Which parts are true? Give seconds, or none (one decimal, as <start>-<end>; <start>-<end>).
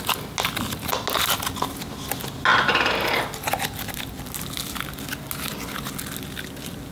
0.0-6.9